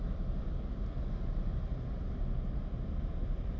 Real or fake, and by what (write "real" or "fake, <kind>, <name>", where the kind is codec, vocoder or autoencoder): fake, vocoder, BigVGAN v2